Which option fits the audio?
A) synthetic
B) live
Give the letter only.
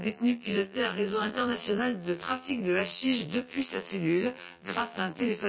A